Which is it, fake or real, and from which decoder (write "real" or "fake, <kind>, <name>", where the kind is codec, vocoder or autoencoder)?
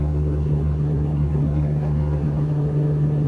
fake, codec, SNAC